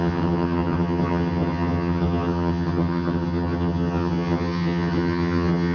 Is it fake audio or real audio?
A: fake